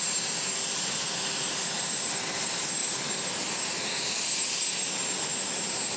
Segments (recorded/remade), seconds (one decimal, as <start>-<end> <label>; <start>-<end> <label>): 0.0-5.3 remade; 5.3-6.0 recorded

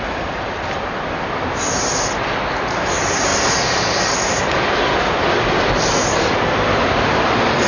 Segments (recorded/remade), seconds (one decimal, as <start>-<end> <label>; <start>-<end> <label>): 0.0-1.9 remade; 1.9-2.5 recorded; 2.5-3.3 remade; 3.3-5.0 recorded; 5.0-7.7 remade

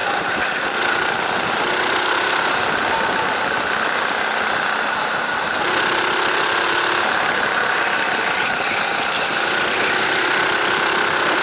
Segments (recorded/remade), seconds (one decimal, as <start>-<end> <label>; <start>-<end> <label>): 0.0-0.8 remade; 0.8-11.4 recorded

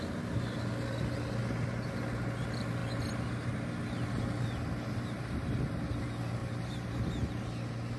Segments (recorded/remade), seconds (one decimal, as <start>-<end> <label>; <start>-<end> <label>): 0.0-6.4 recorded; 6.4-6.9 remade; 6.9-8.0 recorded

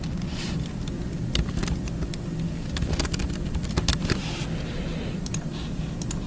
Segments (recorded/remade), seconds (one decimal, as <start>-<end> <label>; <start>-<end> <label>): 0.0-6.3 recorded

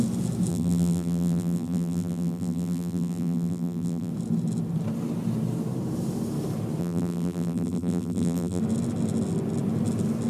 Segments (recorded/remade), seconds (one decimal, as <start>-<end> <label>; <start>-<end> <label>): 0.0-0.5 recorded; 0.5-4.1 remade; 4.1-6.8 recorded; 6.8-8.6 remade; 8.6-10.3 recorded

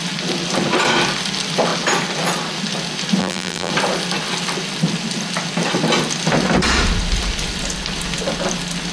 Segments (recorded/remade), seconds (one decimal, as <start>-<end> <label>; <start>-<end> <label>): 0.0-3.2 recorded; 3.2-3.7 remade; 3.7-8.9 recorded